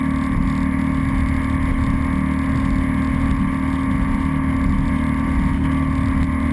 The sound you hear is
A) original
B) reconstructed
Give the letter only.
A